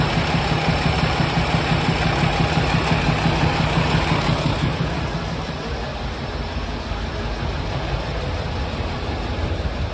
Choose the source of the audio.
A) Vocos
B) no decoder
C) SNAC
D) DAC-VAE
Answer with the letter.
B